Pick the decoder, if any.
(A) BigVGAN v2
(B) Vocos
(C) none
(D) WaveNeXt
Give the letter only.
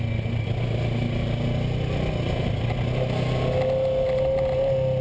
C